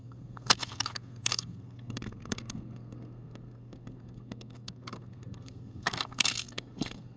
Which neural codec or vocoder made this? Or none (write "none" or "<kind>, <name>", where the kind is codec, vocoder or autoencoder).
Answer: codec, SNAC